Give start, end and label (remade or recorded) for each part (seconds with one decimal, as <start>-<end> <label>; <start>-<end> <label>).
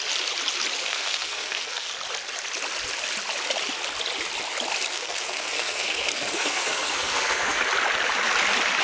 0.0-0.8 recorded; 0.8-1.9 remade; 1.9-4.9 recorded; 4.9-7.6 remade; 7.6-8.8 recorded